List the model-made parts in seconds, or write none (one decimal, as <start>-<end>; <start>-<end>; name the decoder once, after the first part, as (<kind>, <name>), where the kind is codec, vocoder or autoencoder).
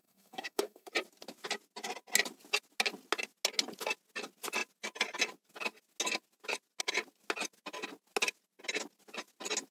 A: 0.0-0.9 (codec, SNAC)